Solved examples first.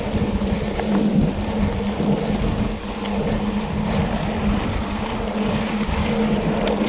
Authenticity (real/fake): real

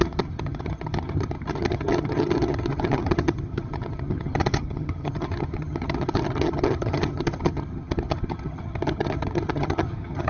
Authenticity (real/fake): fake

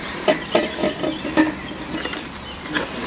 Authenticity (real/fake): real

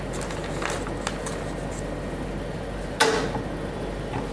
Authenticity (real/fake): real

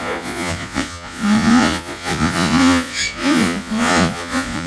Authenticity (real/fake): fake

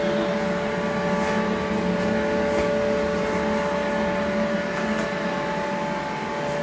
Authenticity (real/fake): real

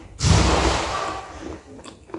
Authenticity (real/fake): real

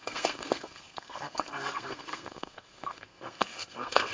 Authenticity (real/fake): fake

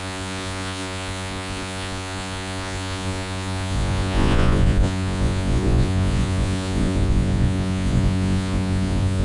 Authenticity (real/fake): fake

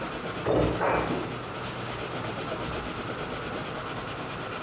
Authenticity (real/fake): real